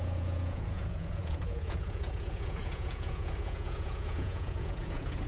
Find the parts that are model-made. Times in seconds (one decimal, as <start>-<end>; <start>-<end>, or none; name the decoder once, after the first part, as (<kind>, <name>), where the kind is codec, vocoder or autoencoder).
0.0-5.3 (vocoder, Vocos)